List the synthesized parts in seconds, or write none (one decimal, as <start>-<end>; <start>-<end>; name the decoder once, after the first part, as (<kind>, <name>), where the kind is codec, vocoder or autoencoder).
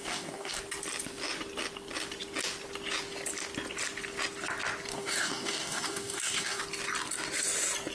0.0-0.6 (codec, DAC); 4.9-6.6